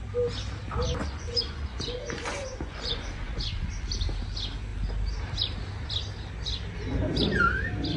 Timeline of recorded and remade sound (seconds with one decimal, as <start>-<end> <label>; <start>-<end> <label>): 0.0-1.0 recorded; 1.0-3.7 remade; 3.7-8.0 recorded